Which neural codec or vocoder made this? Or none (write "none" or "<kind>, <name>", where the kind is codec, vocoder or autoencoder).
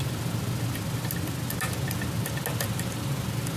none